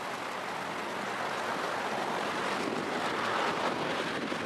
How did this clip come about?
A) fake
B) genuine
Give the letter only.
B